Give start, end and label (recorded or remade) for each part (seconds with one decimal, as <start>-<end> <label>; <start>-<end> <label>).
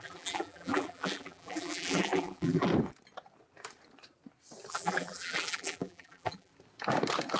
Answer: 0.0-2.7 remade; 2.7-4.7 recorded; 4.7-6.5 remade; 6.5-7.4 recorded